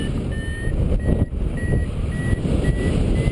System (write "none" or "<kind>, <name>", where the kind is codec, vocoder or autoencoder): none